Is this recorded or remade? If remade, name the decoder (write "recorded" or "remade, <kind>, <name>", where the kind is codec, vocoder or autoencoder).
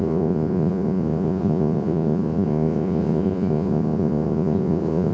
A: remade, vocoder, Vocos